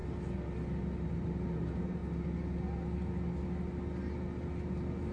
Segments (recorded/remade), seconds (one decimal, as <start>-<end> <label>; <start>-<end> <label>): 0.0-1.1 recorded; 1.1-2.0 remade; 2.0-5.1 recorded